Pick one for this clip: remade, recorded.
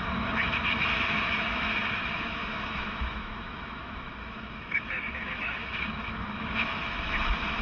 remade